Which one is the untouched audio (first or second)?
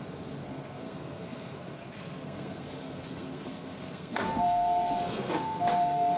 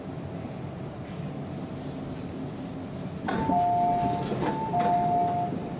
second